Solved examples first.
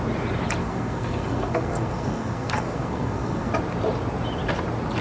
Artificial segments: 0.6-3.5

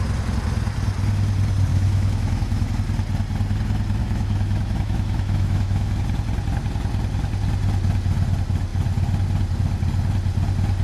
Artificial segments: 1.7-2.7; 4.0-6.0

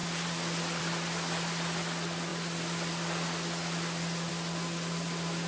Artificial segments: none

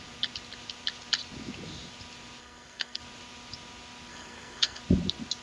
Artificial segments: 2.4-3.0; 4.1-4.8

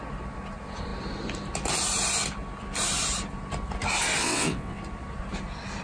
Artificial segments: 4.2-4.8

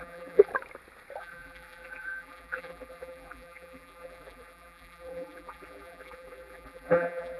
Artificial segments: 0.0-0.5; 1.2-7.4

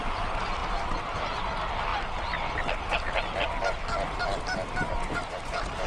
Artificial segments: none